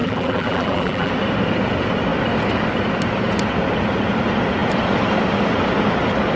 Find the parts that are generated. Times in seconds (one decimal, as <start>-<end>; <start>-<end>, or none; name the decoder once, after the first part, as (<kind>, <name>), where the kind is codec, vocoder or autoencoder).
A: 0.0-1.1 (vocoder, BigVGAN v2)